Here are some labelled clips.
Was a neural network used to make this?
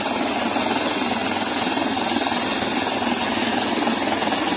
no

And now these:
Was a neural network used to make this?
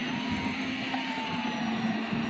no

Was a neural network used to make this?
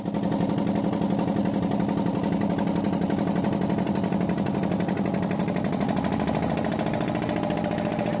no